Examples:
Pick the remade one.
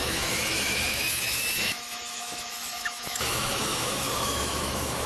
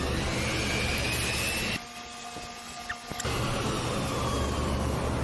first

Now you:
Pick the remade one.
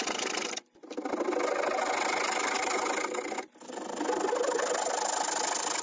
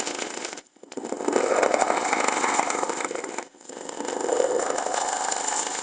second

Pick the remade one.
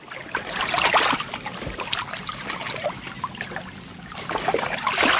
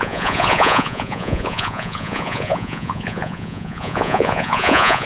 second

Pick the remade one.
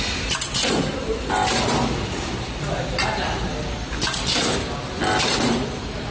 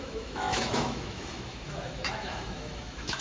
second